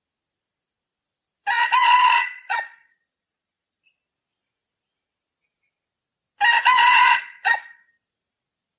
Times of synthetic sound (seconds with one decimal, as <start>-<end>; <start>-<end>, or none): 1.5-3.8; 6.7-7.8